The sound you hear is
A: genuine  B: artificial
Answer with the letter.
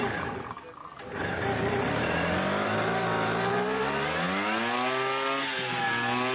A